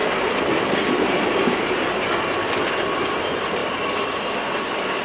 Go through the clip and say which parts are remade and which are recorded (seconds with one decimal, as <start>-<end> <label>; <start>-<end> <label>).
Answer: 0.0-3.6 remade; 3.6-5.0 recorded